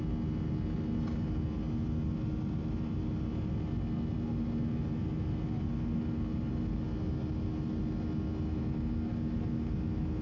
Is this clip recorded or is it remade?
recorded